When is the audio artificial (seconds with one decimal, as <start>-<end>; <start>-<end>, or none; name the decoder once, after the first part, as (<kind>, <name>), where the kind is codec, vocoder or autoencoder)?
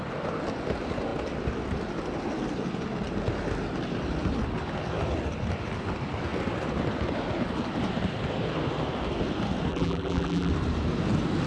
9.7-10.5 (vocoder, BigVGAN v2)